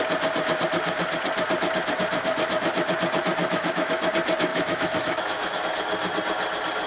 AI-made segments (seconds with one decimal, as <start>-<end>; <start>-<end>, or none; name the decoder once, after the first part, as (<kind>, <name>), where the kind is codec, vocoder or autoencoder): 3.4-4.1 (autoencoder, DAC-VAE); 4.5-5.6